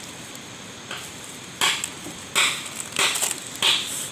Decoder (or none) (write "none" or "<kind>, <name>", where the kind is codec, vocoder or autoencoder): none